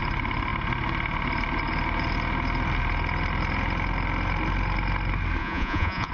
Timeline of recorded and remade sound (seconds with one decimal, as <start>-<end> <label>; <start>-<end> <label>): 0.0-5.4 recorded; 5.4-6.1 remade